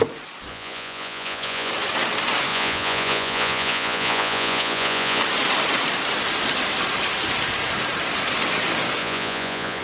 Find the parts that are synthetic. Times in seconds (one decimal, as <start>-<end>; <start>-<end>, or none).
0.5-1.7; 2.5-5.2; 9.0-9.8